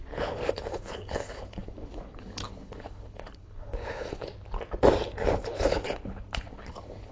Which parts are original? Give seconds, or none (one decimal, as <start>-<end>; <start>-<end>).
4.3-5.3